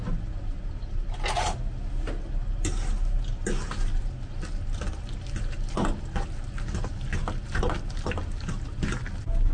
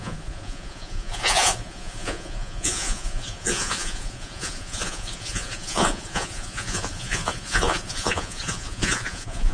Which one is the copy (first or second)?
second